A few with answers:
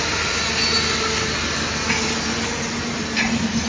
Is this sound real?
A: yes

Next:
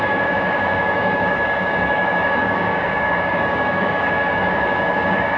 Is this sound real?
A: no